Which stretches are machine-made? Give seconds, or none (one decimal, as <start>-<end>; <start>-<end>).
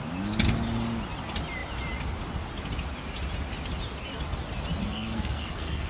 4.8-5.9